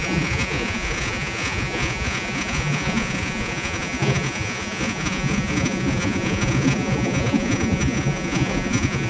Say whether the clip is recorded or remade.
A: remade